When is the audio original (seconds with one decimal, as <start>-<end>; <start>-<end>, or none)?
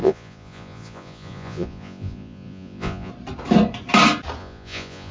3.1-4.4